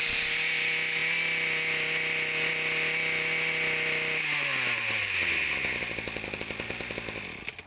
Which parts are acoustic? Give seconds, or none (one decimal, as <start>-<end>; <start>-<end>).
0.0-7.7